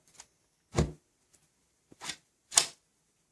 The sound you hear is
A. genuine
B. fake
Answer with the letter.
A